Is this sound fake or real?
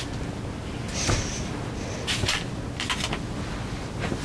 real